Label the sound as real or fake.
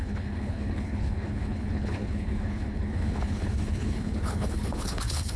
fake